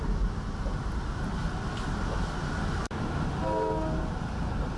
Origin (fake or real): real